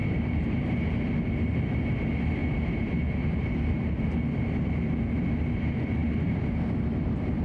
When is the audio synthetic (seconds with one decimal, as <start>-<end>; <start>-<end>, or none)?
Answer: 0.0-0.6; 2.4-3.9; 6.0-7.4